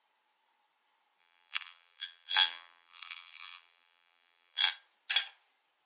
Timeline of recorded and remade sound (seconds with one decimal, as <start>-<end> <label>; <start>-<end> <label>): 0.0-1.2 recorded; 1.2-4.7 remade; 4.7-5.9 recorded

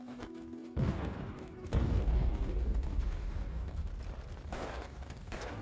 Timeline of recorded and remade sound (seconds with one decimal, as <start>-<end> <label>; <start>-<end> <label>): 0.0-3.9 remade; 3.9-4.5 recorded; 4.5-5.6 remade

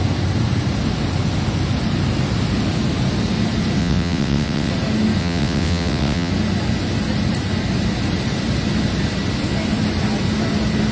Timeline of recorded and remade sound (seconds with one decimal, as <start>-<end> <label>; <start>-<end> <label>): 0.0-3.8 recorded; 3.8-4.7 remade; 4.7-5.2 recorded; 5.2-6.3 remade; 6.3-10.9 recorded